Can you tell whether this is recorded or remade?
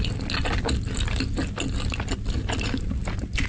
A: recorded